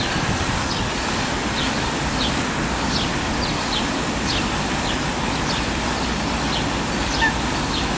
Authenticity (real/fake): real